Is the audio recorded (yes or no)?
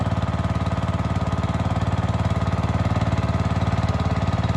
yes